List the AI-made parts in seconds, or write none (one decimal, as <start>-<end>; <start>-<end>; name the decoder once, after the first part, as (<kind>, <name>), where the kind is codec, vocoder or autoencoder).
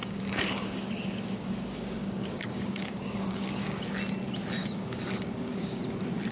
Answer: 0.0-3.8 (codec, DAC); 4.6-5.8